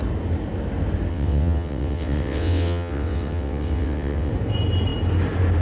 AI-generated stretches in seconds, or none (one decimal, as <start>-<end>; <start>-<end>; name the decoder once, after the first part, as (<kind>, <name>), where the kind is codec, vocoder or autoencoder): 1.1-4.3 (vocoder, WaveNeXt)